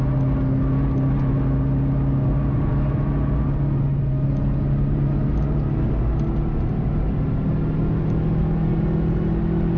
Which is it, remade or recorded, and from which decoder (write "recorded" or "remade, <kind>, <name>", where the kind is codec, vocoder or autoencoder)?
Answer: recorded